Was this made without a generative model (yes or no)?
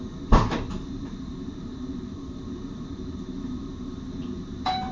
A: no